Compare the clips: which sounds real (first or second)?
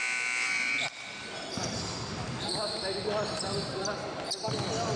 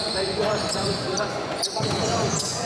first